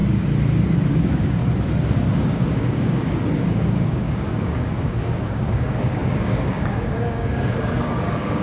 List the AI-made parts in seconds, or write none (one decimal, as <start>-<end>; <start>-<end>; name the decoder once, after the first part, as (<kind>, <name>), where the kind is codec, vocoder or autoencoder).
0.9-1.4 (codec, DAC); 2.1-8.4